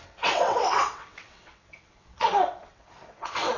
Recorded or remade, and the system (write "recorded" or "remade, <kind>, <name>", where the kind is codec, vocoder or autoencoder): remade, vocoder, WaveNeXt